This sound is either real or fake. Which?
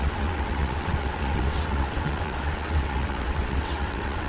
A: fake